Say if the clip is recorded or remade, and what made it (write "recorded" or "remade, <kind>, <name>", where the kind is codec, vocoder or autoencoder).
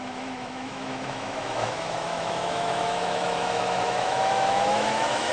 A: remade, autoencoder, DAC-VAE